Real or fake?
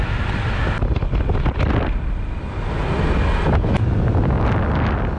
real